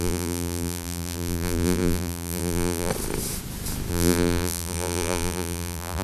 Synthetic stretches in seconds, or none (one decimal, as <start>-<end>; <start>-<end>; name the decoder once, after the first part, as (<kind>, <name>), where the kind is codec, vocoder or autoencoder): 0.0-2.9 (vocoder, BigVGAN v2); 3.9-6.0